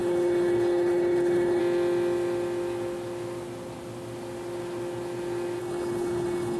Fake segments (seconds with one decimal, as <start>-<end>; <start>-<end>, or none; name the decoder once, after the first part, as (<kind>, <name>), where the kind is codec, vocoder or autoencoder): 0.0-1.6 (codec, HILCodec); 5.6-6.6